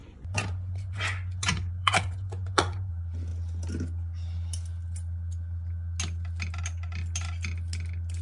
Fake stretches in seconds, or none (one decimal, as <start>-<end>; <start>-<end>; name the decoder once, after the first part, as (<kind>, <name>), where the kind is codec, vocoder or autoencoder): 0.0-2.9 (vocoder, Vocos)